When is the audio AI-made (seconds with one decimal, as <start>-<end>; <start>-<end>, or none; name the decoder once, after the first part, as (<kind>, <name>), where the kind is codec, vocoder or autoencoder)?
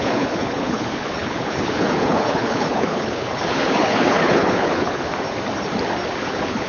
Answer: 0.0-5.1 (codec, HILCodec); 6.2-6.7